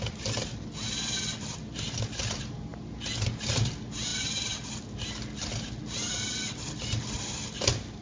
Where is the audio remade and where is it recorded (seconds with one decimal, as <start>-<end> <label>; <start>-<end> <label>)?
0.0-8.0 recorded